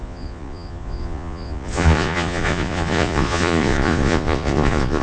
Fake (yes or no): yes